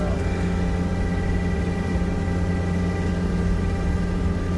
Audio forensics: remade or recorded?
recorded